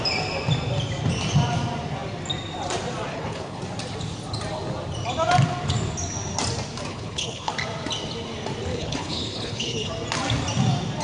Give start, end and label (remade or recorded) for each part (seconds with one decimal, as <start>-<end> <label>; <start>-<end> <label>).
0.0-3.1 recorded; 3.1-3.6 remade; 3.6-6.9 recorded; 6.9-7.5 remade; 7.5-8.7 recorded; 8.7-9.9 remade; 9.9-11.0 recorded